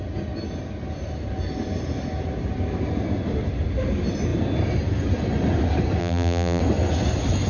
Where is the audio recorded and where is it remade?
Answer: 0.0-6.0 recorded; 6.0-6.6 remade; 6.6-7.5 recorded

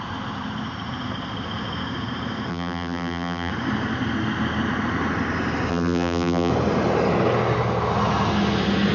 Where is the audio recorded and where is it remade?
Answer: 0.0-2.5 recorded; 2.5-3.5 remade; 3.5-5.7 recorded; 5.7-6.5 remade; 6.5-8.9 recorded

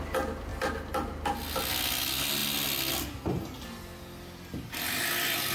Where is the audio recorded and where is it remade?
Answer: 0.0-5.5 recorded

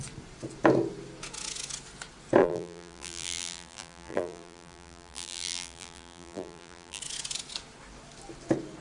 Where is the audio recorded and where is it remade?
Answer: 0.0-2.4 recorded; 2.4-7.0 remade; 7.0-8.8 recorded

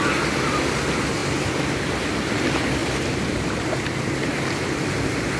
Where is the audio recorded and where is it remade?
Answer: 0.0-1.2 recorded; 1.2-2.3 remade; 2.3-2.8 recorded; 2.8-4.9 remade; 4.9-5.4 recorded

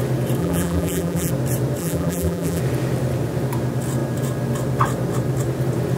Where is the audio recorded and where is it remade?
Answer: 0.0-0.4 recorded; 0.4-1.3 remade; 1.3-1.8 recorded; 1.8-2.6 remade; 2.6-6.0 recorded

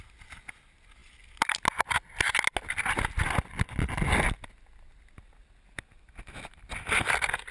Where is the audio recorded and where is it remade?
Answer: 0.0-7.5 recorded

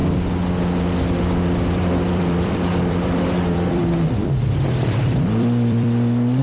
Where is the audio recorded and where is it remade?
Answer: 0.0-2.1 recorded; 2.1-6.4 remade